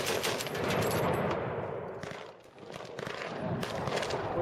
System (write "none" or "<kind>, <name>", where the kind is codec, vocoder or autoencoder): none